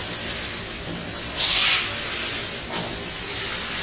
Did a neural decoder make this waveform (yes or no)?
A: no